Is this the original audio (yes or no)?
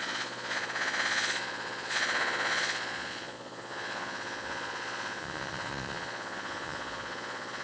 no